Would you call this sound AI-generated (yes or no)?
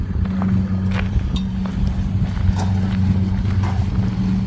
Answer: no